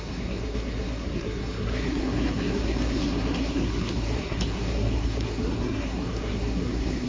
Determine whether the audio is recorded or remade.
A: remade